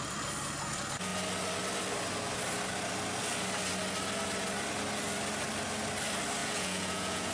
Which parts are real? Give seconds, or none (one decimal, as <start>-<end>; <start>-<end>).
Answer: 0.0-6.4